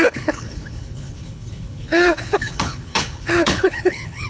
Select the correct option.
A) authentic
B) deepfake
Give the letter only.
B